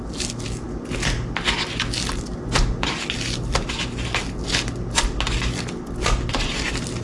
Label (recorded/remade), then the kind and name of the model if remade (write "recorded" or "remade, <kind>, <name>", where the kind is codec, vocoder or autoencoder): recorded